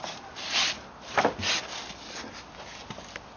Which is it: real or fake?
real